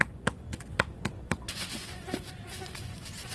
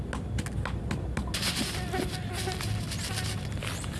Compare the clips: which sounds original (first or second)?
second